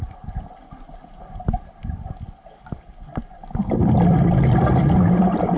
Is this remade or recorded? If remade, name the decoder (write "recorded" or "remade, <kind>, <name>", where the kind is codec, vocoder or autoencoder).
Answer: recorded